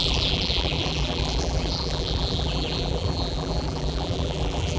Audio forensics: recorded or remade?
remade